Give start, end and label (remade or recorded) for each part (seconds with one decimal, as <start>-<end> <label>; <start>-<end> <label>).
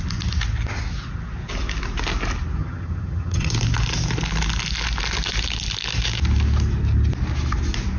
0.0-2.6 recorded; 2.6-3.5 remade; 3.5-8.0 recorded